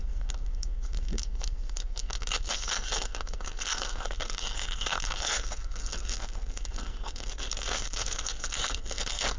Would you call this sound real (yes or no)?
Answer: no